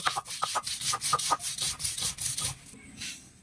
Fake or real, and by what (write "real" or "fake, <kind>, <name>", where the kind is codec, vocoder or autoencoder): real